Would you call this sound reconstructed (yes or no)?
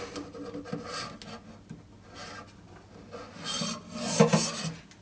no